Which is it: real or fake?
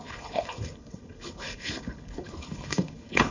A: fake